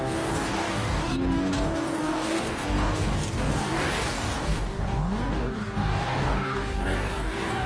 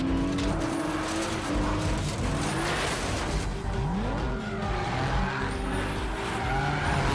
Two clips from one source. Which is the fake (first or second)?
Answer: first